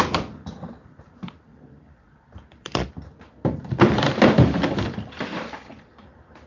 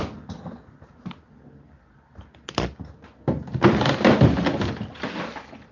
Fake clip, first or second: first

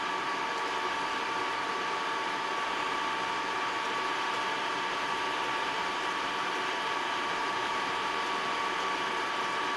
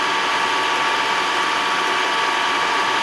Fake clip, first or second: first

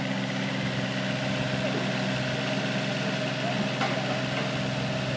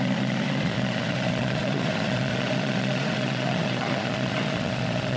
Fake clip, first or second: second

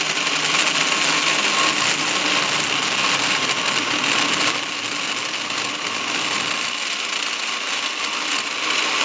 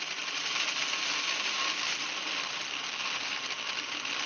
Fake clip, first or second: second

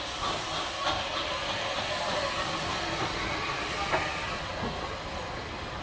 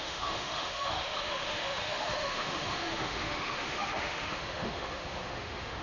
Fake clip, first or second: second